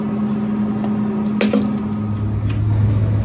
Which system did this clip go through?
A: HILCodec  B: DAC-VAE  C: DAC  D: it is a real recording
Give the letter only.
D